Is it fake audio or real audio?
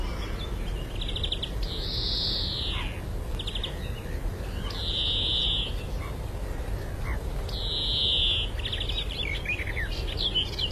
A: real